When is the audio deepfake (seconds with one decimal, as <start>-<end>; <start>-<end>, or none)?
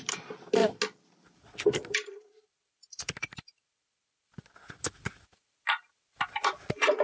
none